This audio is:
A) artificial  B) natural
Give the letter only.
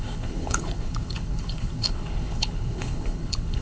A